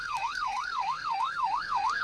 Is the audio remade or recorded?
remade